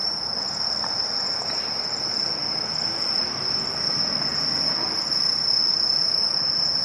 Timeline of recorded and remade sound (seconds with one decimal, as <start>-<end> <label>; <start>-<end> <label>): 0.0-0.9 remade; 0.9-6.8 recorded